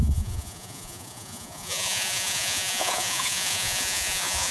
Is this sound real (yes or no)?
no